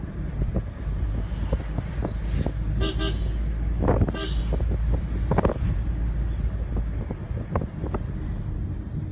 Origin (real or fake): real